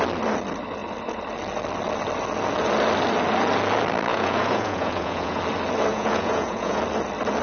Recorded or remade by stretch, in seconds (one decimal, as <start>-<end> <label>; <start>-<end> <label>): 0.0-4.1 recorded; 4.1-5.4 remade; 5.4-5.9 recorded; 5.9-6.8 remade; 6.8-7.4 recorded